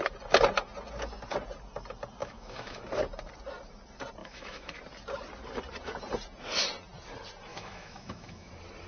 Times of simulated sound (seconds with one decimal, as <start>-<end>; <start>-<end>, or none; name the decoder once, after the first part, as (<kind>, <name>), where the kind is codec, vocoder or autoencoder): 2.2-2.8 (autoencoder, DAC-VAE); 4.2-4.8; 7.5-8.5